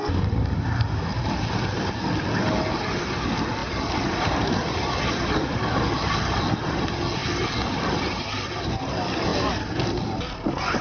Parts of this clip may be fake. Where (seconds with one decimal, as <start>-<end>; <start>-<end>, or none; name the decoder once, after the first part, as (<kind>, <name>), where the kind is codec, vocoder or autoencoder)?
3.6-6.5 (vocoder, BigVGAN v2); 7.2-8.6; 9.3-10.8